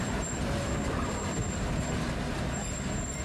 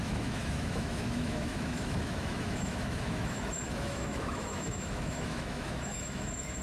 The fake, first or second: second